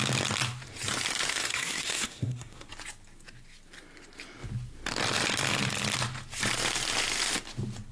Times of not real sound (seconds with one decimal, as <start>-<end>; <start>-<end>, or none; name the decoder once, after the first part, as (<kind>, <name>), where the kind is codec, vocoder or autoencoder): 1.3-2.7 (codec, SNAC)

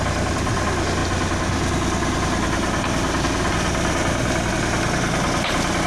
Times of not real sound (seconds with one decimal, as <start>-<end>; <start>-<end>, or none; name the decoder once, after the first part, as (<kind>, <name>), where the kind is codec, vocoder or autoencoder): none

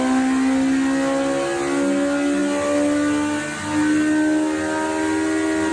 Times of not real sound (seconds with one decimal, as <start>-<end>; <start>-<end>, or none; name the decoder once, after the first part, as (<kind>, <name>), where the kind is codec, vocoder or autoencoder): none

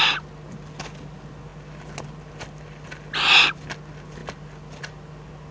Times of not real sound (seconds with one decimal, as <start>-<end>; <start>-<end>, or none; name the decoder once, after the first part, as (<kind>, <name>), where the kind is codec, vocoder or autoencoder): none

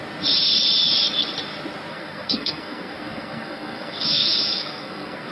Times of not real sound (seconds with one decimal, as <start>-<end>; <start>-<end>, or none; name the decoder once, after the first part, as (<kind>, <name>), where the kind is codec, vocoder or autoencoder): 1.9-5.3 (codec, SNAC)

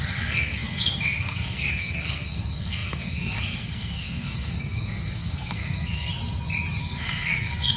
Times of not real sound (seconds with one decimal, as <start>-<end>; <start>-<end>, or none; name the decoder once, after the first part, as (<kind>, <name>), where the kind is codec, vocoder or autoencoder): 0.0-6.1 (codec, SNAC); 6.8-7.8

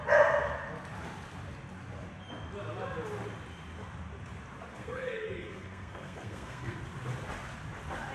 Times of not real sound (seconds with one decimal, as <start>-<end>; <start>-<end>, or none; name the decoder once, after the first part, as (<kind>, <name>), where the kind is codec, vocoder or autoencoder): 4.7-6.8 (codec, SNAC)

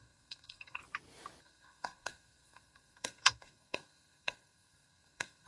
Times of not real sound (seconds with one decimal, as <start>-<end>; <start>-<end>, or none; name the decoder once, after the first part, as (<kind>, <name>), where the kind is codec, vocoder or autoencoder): 0.0-0.8 (codec, SNAC); 1.4-5.5